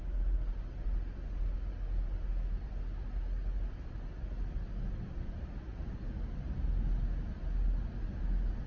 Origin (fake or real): real